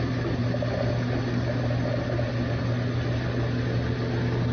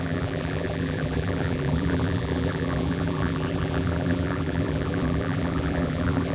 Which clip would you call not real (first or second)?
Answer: second